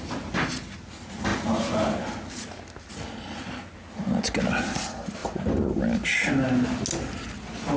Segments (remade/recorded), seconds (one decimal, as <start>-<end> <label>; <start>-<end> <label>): 0.0-5.2 recorded; 5.2-5.8 remade; 5.8-7.8 recorded